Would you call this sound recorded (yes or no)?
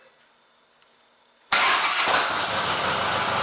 yes